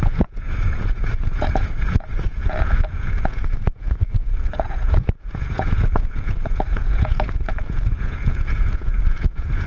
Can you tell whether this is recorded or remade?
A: remade